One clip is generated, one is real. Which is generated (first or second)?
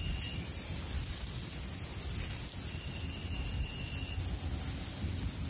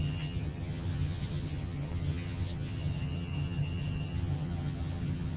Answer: second